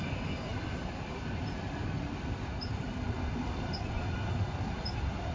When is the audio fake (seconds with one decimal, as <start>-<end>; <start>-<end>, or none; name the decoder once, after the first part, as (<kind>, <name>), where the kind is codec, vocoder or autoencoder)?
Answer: none

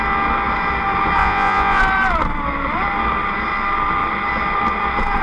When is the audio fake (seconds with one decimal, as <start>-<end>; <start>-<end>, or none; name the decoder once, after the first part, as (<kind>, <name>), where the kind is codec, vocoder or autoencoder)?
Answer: 1.2-1.8 (vocoder, Vocos)